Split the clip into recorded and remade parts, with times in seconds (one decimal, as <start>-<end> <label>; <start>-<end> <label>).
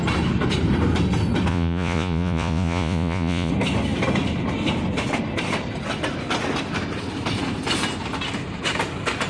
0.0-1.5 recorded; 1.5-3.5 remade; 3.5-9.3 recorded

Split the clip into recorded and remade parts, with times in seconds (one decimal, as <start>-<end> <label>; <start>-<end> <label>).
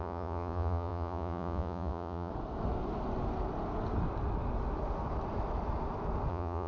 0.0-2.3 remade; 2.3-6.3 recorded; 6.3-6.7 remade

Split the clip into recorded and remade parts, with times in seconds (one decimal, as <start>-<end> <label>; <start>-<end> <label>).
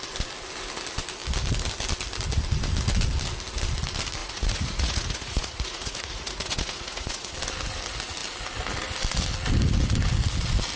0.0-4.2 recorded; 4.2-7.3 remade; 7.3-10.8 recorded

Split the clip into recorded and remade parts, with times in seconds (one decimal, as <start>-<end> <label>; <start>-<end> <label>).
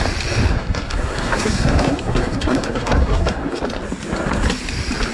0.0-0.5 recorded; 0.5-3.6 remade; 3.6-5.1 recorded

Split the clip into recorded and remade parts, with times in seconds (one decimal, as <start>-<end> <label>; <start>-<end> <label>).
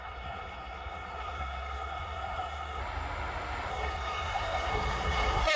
0.0-2.8 remade; 2.8-3.7 recorded; 3.7-5.6 remade